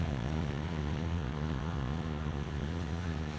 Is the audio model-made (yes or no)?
yes